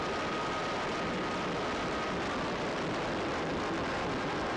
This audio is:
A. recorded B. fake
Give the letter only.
B